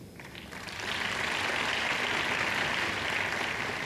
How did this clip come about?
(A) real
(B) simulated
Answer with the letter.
A